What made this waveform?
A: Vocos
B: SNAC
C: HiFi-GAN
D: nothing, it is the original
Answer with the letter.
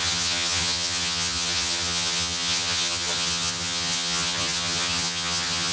C